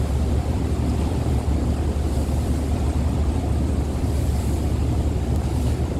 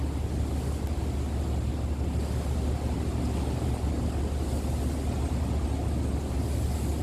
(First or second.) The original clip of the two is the second